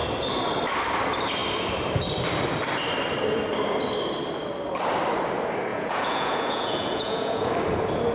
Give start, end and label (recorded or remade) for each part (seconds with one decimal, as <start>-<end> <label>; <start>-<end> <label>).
0.0-5.7 recorded; 5.7-7.5 remade; 7.5-8.1 recorded